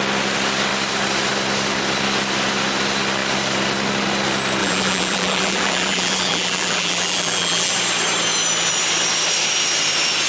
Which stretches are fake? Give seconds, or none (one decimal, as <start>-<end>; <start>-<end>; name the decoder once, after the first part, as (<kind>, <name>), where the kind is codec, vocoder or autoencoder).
4.6-7.7 (vocoder, BigVGAN v2)